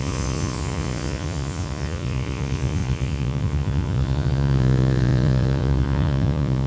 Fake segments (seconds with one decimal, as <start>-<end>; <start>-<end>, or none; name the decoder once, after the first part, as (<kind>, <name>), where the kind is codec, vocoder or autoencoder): 0.0-6.7 (vocoder, Vocos)